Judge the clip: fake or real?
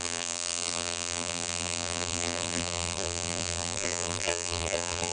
fake